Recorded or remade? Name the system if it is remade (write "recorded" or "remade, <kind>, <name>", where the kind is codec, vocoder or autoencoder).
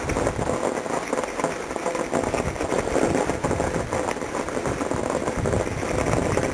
recorded